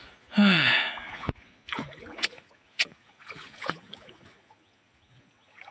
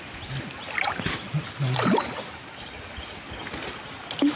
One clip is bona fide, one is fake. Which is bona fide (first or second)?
second